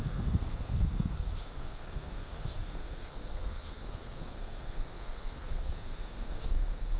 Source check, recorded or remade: remade